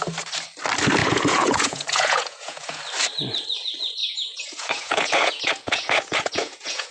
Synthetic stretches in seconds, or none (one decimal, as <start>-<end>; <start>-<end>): 1.0-2.8; 4.0-6.9